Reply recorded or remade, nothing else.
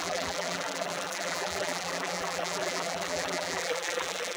remade